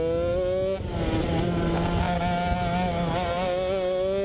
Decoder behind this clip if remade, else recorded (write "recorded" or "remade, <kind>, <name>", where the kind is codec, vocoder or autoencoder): recorded